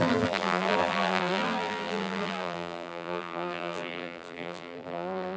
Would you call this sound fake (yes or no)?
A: yes